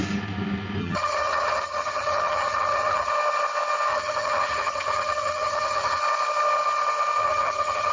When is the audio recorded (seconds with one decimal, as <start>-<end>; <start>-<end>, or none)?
0.0-0.8; 3.1-3.9; 6.0-7.2